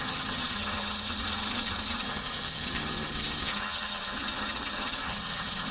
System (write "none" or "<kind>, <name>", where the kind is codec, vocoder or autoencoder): vocoder, HiFi-GAN